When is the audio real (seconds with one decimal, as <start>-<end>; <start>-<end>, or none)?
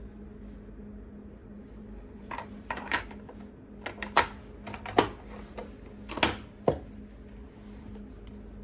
0.0-1.4; 3.1-8.6